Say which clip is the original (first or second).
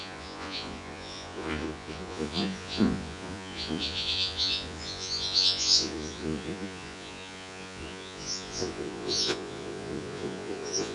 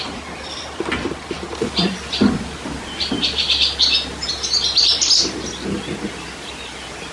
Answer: second